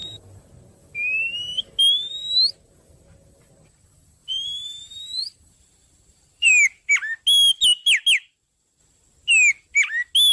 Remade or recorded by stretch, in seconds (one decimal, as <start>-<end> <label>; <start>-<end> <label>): 0.0-4.2 recorded; 4.2-6.5 remade; 6.5-10.3 recorded